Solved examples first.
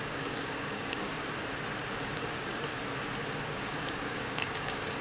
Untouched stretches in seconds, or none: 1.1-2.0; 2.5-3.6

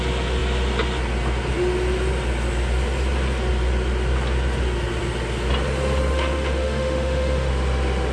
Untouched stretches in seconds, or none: 0.0-6.1; 7.5-8.1